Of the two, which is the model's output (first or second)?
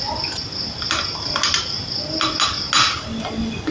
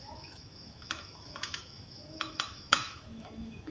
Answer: second